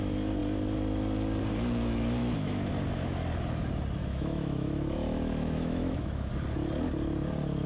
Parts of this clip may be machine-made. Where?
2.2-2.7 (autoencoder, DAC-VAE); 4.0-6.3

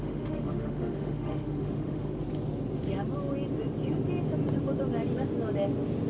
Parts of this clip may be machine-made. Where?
0.0-2.1 (autoencoder, DAC-VAE)